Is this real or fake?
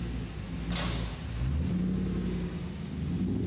real